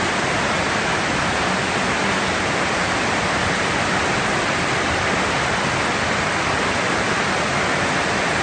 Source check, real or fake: real